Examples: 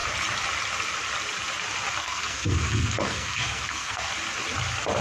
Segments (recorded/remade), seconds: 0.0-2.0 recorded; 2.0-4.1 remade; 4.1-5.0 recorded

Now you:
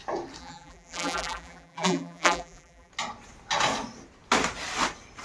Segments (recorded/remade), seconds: 0.0-0.4 recorded; 0.4-2.9 remade; 2.9-5.2 recorded

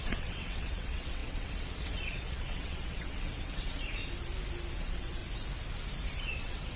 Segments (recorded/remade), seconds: 0.0-4.0 remade; 4.0-4.8 recorded; 4.8-5.2 remade; 5.2-6.2 recorded; 6.2-6.8 remade

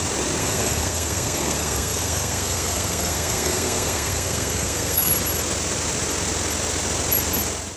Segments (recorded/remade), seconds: 0.0-0.4 recorded; 0.4-5.1 remade; 5.1-7.8 recorded

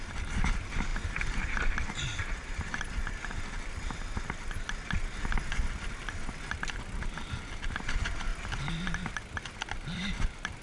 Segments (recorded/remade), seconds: 0.0-10.6 recorded

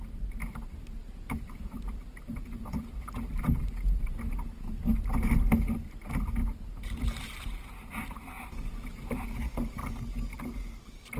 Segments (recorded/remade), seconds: 0.0-1.0 recorded; 1.0-3.6 remade; 3.6-6.4 recorded; 6.4-7.9 remade; 7.9-11.2 recorded

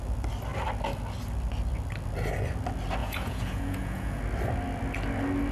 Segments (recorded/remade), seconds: 0.0-3.0 recorded; 3.0-4.2 remade; 4.2-5.5 recorded